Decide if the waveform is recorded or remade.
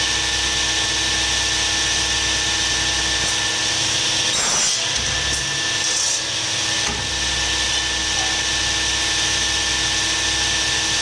recorded